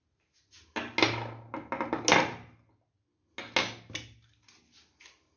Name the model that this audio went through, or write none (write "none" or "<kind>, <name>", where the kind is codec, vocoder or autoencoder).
none